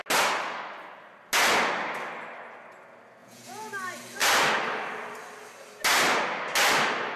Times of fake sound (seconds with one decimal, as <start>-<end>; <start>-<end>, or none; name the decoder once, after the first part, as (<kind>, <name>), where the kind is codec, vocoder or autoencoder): 3.2-3.7 (vocoder, Vocos)